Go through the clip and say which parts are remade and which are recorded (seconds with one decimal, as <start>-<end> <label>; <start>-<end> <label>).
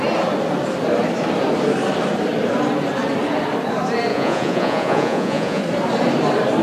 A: 0.0-4.1 recorded; 4.1-5.6 remade; 5.6-6.6 recorded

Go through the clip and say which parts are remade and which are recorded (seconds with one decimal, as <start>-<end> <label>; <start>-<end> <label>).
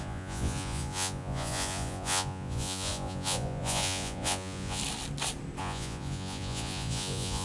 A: 0.0-4.8 remade; 4.8-5.6 recorded; 5.6-7.4 remade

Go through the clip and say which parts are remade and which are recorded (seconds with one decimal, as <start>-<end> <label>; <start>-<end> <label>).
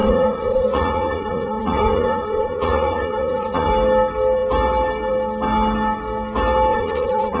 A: 0.0-3.7 remade; 3.7-6.7 recorded; 6.7-7.4 remade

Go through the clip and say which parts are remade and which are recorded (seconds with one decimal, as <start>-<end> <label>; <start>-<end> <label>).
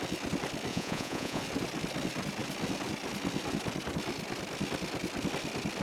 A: 0.0-0.7 recorded; 0.7-1.4 remade; 1.4-5.8 recorded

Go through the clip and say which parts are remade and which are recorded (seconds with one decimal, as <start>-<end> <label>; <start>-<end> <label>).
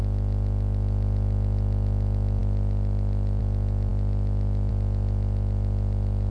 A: 0.0-6.3 recorded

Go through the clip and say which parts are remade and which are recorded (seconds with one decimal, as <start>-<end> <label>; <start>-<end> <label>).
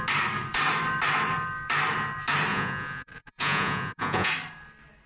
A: 0.0-2.5 recorded; 2.5-4.3 remade; 4.3-5.1 recorded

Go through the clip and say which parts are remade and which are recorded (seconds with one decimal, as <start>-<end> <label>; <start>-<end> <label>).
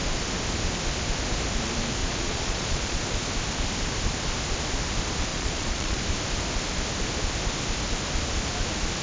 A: 0.0-2.0 recorded; 2.0-3.0 remade; 3.0-5.3 recorded; 5.3-6.0 remade; 6.0-9.0 recorded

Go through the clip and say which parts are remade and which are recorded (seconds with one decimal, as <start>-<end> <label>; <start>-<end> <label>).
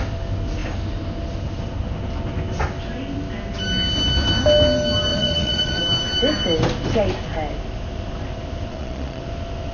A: 0.0-5.1 recorded; 5.1-5.8 remade; 5.8-8.7 recorded; 8.7-9.2 remade; 9.2-9.7 recorded